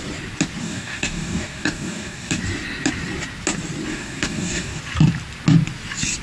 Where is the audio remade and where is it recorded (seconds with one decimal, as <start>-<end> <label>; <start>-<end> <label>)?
0.0-0.6 recorded; 0.6-2.4 remade; 2.4-3.9 recorded; 3.9-4.8 remade; 4.8-6.2 recorded